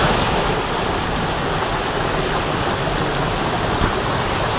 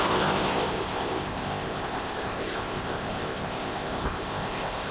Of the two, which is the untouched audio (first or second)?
first